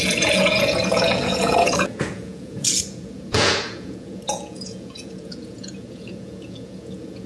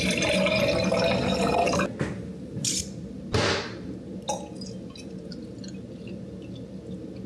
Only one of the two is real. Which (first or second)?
second